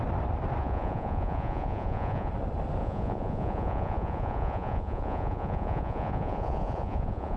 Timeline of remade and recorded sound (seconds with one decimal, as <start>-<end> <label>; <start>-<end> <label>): 0.0-0.6 recorded; 0.6-2.3 remade; 2.3-2.8 recorded; 2.8-7.4 remade